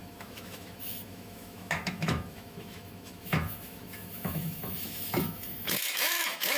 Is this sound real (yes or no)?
no